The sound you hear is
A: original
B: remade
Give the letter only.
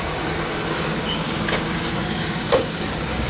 B